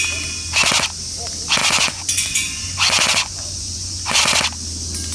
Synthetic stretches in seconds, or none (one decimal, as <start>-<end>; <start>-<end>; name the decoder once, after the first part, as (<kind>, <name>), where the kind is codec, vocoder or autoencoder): 1.6-4.2 (vocoder, Vocos)